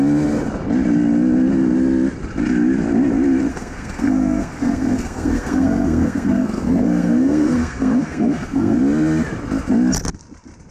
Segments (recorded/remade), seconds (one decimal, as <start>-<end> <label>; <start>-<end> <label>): 0.0-3.5 recorded; 3.5-8.8 remade; 8.8-10.7 recorded